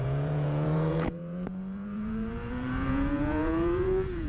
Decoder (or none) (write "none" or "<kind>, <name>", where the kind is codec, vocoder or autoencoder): vocoder, Vocos